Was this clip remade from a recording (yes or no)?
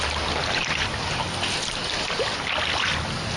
no